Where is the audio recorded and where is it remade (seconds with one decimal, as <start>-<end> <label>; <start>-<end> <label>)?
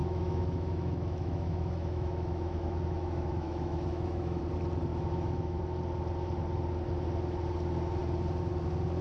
0.0-4.4 remade; 4.4-4.9 recorded; 4.9-5.6 remade; 5.6-9.0 recorded